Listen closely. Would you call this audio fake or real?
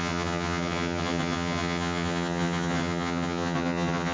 fake